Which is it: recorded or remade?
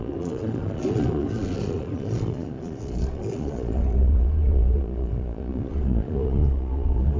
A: remade